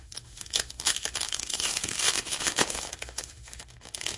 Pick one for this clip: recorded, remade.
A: remade